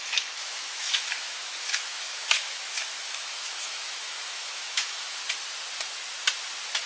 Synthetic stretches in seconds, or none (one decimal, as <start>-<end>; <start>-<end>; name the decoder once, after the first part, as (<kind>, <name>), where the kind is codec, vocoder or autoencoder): 0.0-5.2 (autoencoder, DAC-VAE)